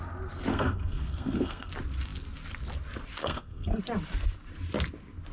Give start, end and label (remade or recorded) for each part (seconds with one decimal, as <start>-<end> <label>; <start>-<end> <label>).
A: 0.0-0.5 recorded; 0.5-1.7 remade; 1.7-3.2 recorded; 3.2-3.8 remade; 3.8-5.3 recorded